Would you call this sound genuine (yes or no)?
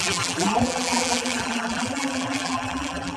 no